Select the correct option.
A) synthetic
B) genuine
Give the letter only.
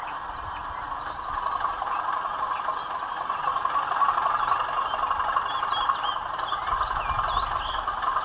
B